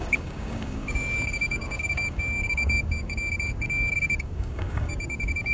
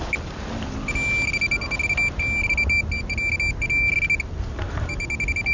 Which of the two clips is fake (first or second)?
first